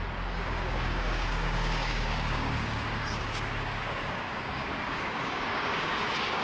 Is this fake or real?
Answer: fake